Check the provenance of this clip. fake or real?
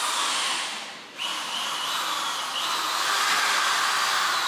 real